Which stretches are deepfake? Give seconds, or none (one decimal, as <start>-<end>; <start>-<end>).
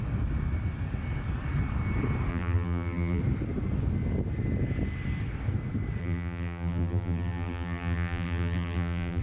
2.3-3.2; 6.0-9.2